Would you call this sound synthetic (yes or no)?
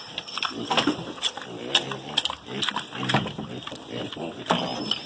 no